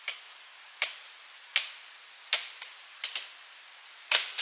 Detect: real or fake real